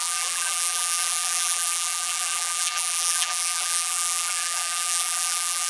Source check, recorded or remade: remade